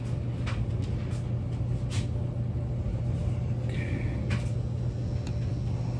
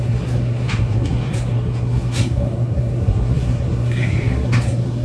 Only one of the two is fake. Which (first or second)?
second